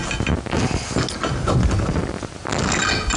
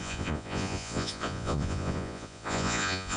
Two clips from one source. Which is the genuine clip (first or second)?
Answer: first